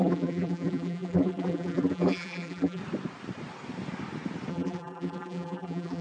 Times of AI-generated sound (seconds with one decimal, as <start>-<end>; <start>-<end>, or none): 0.0-2.8; 4.5-6.0